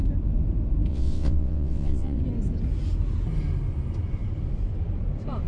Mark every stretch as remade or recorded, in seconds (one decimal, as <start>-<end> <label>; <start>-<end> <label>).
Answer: 0.0-0.9 recorded; 0.9-2.2 remade; 2.2-5.5 recorded